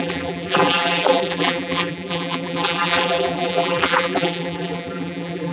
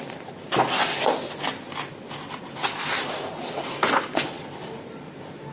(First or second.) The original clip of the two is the second